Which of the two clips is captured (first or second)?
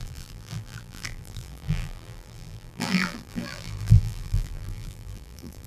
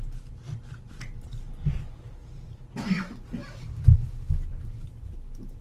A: second